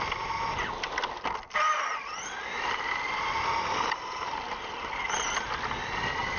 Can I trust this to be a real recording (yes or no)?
yes